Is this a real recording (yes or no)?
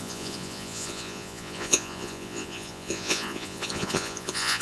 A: no